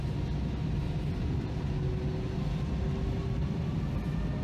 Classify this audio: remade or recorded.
recorded